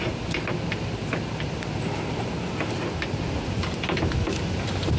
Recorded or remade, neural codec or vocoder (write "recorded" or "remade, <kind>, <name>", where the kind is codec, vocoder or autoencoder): recorded